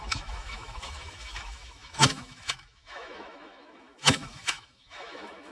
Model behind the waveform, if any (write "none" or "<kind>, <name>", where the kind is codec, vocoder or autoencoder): autoencoder, DAC-VAE